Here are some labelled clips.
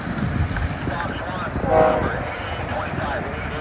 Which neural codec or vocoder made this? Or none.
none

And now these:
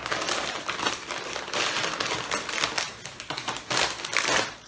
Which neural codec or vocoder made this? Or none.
none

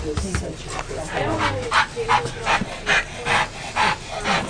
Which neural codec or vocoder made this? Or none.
none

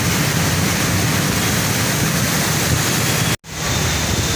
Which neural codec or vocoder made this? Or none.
none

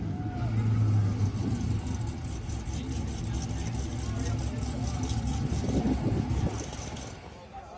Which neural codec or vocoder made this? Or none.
none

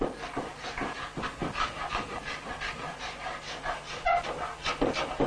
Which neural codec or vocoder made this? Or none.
none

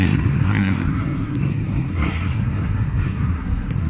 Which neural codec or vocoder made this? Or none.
codec, SNAC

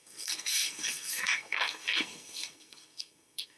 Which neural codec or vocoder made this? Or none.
codec, SNAC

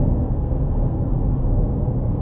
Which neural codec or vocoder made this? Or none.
codec, SNAC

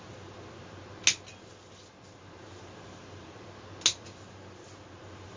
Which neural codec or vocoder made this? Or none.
none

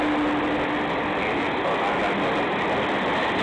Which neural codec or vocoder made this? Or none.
none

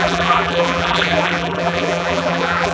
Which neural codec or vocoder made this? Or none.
vocoder, BigVGAN v2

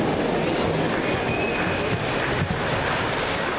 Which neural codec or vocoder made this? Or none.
none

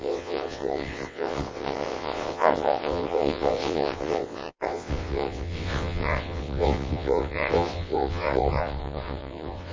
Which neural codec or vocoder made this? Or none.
vocoder, WaveNeXt